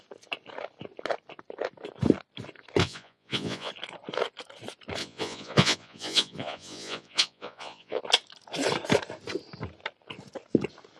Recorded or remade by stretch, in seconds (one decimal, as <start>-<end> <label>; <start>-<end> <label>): 0.0-2.8 recorded; 2.8-3.7 remade; 3.7-5.0 recorded; 5.0-8.0 remade; 8.0-11.0 recorded